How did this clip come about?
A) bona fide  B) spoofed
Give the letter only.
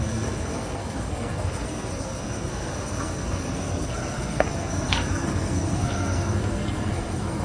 B